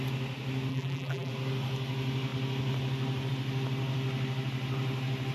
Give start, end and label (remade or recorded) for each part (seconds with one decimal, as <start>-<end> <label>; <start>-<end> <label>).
0.0-0.7 recorded; 0.7-1.3 remade; 1.3-5.3 recorded